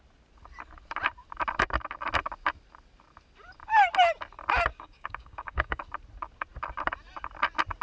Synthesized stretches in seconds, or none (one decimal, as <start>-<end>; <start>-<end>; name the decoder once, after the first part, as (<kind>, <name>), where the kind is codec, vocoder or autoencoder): 4.7-5.8 (codec, DAC)

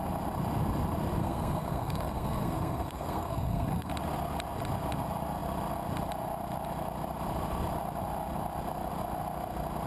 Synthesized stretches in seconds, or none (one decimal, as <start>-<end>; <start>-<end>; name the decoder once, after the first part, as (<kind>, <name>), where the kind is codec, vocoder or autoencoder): 1.2-3.9 (codec, SNAC)

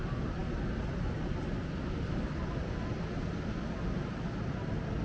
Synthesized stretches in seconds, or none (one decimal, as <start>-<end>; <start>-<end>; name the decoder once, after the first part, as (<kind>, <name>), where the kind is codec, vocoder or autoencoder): none

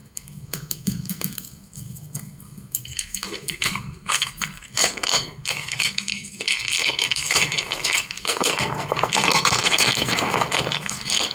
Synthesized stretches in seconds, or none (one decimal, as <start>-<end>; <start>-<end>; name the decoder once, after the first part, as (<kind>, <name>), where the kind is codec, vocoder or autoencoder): 0.0-11.3 (codec, SNAC)

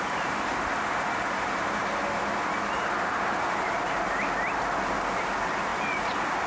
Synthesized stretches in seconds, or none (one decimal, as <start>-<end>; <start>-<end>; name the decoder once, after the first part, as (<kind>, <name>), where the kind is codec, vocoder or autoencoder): none